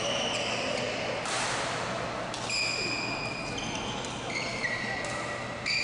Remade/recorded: recorded